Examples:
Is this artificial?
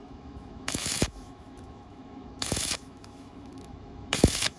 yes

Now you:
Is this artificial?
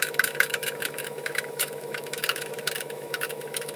yes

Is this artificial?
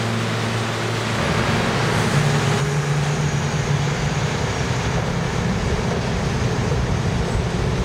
no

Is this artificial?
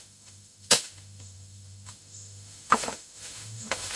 yes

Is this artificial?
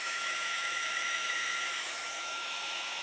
yes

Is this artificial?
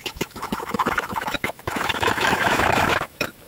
yes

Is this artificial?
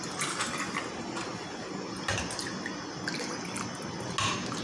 no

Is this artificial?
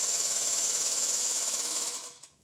yes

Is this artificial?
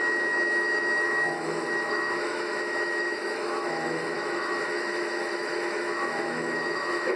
yes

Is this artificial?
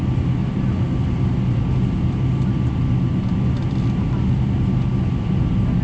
no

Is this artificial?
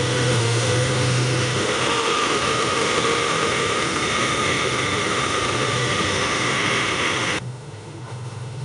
yes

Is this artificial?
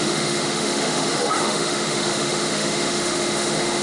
yes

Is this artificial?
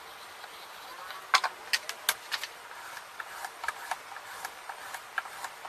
no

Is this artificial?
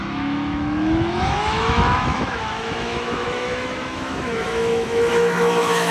yes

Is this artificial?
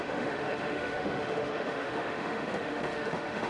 yes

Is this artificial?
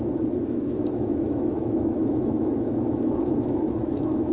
yes